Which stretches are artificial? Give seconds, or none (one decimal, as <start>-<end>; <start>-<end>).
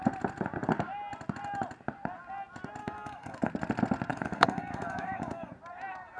2.8-3.5; 4.1-5.5